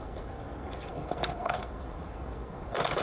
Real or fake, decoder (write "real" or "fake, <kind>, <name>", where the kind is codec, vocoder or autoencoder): fake, codec, SNAC